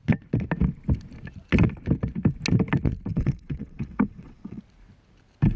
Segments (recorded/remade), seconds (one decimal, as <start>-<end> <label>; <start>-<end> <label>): 0.0-3.1 recorded; 3.1-4.6 remade; 4.6-5.6 recorded